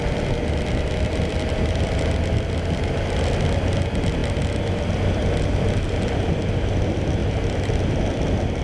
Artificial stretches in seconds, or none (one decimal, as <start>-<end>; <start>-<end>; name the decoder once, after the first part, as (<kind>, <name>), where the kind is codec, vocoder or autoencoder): none